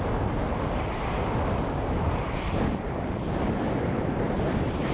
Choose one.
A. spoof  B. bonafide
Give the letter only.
B